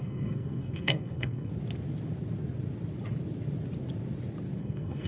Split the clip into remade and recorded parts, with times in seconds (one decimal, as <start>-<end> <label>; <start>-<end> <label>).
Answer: 0.0-1.5 remade; 1.5-4.6 recorded; 4.6-5.1 remade